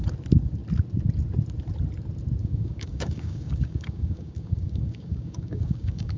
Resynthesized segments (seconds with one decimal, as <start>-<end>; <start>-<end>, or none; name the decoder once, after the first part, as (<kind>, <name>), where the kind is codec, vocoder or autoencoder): 2.4-6.2 (codec, DAC)